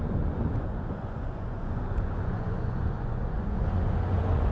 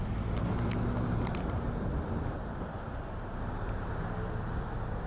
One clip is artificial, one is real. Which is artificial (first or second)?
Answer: first